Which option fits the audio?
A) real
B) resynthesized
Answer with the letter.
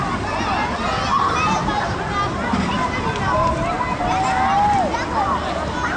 A